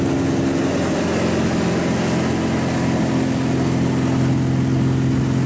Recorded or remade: recorded